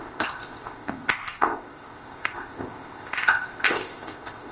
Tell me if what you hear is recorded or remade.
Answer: remade